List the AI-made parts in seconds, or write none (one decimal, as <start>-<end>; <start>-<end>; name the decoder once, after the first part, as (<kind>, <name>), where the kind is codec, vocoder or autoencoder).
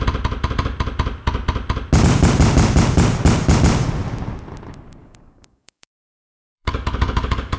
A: 5.0-7.6 (codec, DAC)